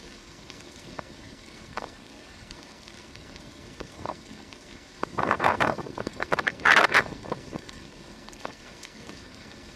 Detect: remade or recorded remade